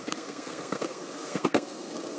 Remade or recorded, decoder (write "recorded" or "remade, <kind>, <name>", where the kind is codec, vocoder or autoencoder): remade, codec, SNAC